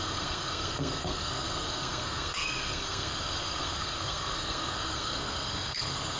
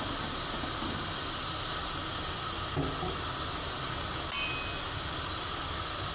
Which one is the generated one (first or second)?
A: first